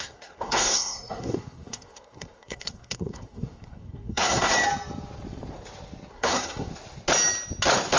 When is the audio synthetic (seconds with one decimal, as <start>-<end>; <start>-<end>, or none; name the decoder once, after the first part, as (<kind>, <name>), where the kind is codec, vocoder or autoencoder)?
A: 0.0-4.5 (codec, SNAC); 6.1-6.7